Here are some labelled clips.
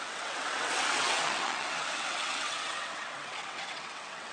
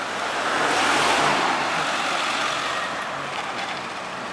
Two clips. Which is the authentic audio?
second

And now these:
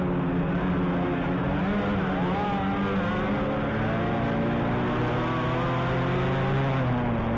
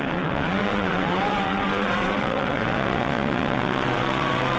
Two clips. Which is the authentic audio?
first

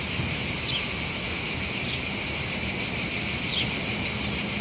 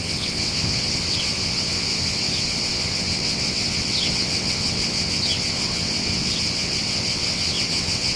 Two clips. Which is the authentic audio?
first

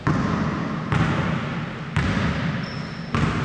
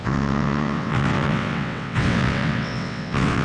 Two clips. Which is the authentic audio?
first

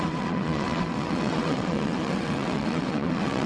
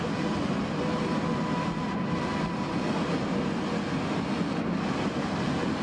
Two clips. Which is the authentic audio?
second